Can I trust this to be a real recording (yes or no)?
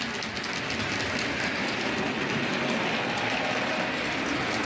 yes